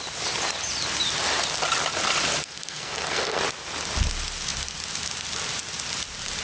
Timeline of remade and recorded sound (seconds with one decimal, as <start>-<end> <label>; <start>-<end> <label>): 0.0-2.4 recorded; 2.4-3.4 remade; 3.4-6.4 recorded